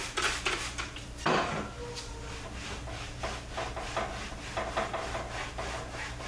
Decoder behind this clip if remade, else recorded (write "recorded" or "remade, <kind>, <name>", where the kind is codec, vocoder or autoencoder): recorded